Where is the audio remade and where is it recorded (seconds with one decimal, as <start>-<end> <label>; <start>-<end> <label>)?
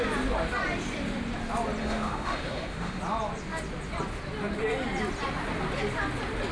0.0-1.8 recorded; 1.8-3.0 remade; 3.0-6.5 recorded